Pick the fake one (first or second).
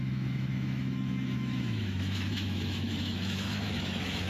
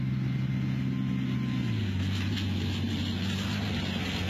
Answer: first